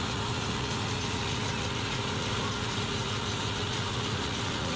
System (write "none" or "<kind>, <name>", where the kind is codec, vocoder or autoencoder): vocoder, Vocos